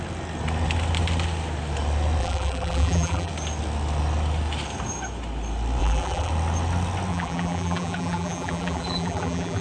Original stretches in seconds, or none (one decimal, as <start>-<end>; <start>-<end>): 0.0-2.2; 3.3-5.8; 6.3-7.1